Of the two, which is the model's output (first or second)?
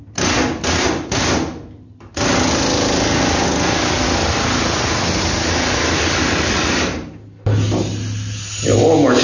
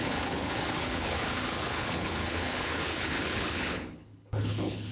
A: second